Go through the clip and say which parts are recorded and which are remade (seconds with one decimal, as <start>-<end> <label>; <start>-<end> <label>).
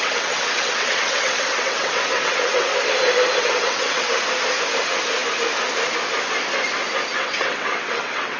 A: 0.0-2.7 remade; 2.7-3.4 recorded; 3.4-4.1 remade; 4.1-7.1 recorded; 7.1-8.4 remade